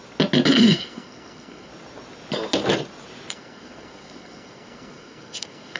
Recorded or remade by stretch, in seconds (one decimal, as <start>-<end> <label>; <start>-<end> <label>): 0.0-0.6 recorded; 0.6-1.7 remade; 1.7-3.3 recorded; 3.3-5.8 remade